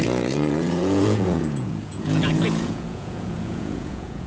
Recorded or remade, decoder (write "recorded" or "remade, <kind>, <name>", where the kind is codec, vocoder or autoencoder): remade, vocoder, Vocos